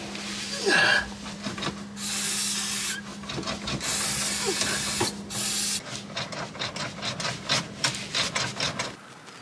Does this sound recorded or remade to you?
recorded